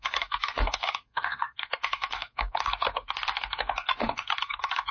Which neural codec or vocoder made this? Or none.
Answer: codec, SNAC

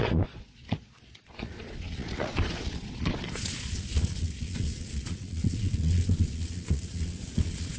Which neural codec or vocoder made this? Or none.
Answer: vocoder, Vocos